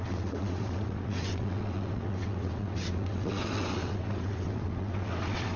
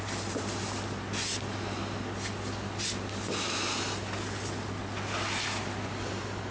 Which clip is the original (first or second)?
second